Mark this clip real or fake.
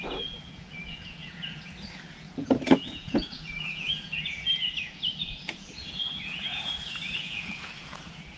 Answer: fake